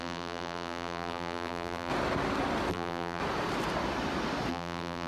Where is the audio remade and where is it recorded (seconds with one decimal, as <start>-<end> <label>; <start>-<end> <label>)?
0.0-1.9 remade; 1.9-2.7 recorded; 2.7-3.2 remade; 3.2-4.5 recorded; 4.5-5.1 remade

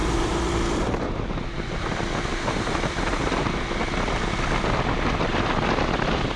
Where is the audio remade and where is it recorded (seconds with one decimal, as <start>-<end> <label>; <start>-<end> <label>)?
0.0-0.5 remade; 0.5-2.3 recorded; 2.3-3.1 remade; 3.1-6.4 recorded

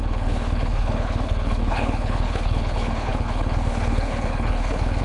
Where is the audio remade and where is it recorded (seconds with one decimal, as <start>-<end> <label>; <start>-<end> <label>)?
0.0-5.0 remade

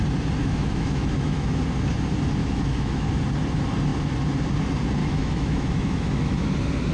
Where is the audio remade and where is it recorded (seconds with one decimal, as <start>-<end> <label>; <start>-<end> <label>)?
0.0-0.4 recorded; 0.4-1.6 remade; 1.6-2.4 recorded; 2.4-3.1 remade; 3.1-5.0 recorded; 5.0-6.5 remade; 6.5-6.9 recorded

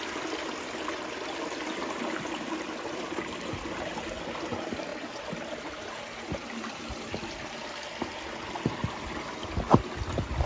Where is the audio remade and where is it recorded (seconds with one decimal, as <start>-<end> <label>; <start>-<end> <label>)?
0.0-10.5 recorded

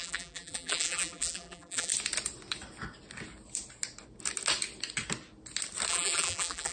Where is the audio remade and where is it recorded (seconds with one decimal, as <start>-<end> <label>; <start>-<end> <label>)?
0.0-1.9 remade; 1.9-5.9 recorded; 5.9-6.7 remade

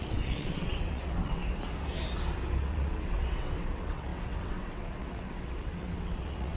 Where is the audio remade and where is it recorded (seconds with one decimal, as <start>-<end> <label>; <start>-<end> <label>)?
0.0-1.4 remade; 1.4-2.6 recorded; 2.6-6.6 remade

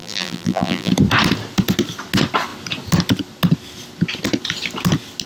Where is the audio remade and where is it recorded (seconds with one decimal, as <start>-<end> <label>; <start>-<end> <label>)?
0.0-0.9 remade; 0.9-5.3 recorded